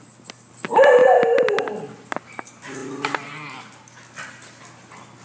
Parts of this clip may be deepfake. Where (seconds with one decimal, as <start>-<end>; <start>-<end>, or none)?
none